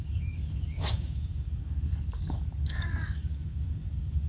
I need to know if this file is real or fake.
fake